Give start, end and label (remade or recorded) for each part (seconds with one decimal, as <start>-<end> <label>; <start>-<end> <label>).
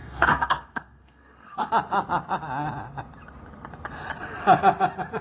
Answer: 0.0-1.7 remade; 1.7-5.2 recorded